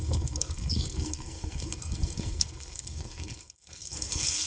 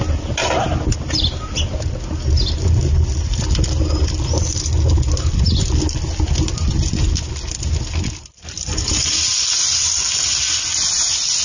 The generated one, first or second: first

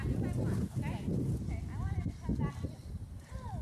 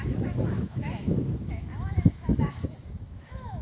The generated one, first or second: second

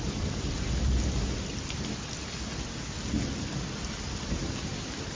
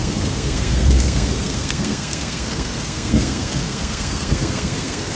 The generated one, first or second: second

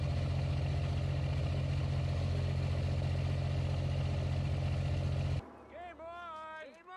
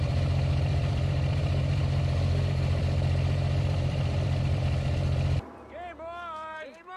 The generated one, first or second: second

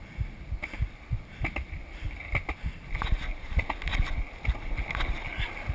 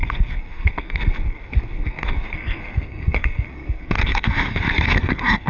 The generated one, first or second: second